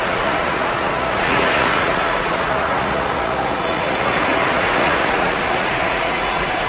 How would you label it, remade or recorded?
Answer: remade